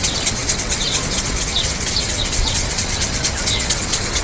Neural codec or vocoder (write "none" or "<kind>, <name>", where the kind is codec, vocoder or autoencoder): vocoder, WaveNeXt